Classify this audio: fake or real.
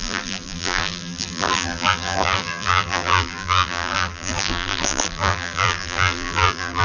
fake